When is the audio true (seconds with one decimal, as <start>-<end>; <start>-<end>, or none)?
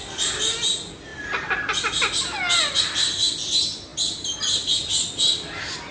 0.0-5.9